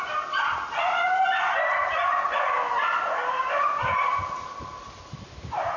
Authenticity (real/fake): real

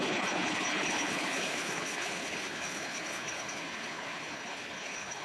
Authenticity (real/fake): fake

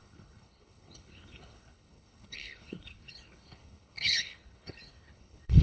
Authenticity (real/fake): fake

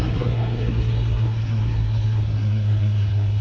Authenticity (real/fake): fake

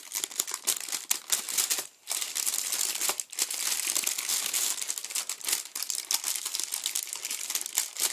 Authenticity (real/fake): real